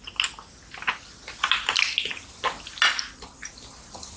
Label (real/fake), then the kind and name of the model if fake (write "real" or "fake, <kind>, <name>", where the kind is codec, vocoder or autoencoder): real